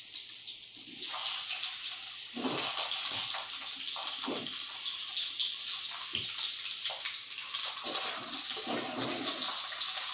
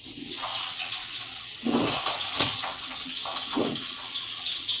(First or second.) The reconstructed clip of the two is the second